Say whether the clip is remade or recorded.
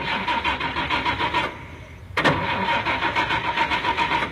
recorded